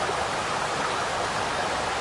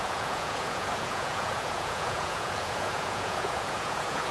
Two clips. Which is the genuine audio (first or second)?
first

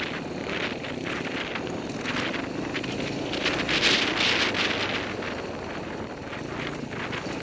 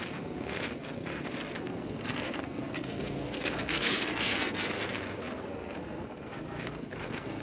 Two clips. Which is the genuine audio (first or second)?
first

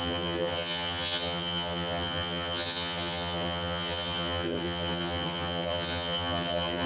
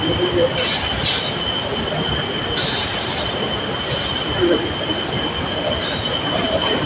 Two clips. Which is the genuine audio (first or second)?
second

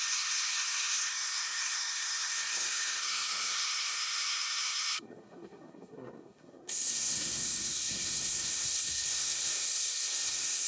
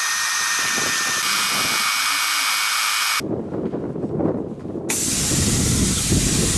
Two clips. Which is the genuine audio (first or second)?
second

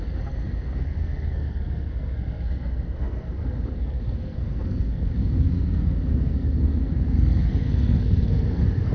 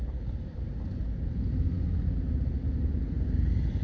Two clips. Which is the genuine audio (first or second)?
second